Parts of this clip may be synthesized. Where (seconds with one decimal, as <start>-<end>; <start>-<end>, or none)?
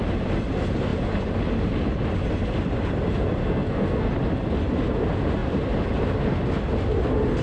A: 3.4-4.1